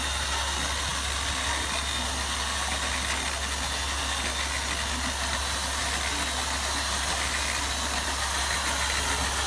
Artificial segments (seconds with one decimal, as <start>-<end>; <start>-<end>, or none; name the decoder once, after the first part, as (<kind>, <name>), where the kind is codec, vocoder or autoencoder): none